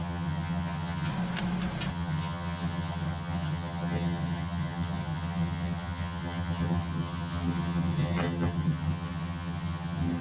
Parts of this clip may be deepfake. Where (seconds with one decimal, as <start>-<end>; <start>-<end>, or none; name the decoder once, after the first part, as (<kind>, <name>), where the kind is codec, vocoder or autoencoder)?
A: 0.0-1.1 (vocoder, HiFi-GAN); 1.9-10.2